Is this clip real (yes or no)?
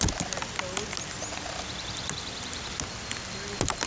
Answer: yes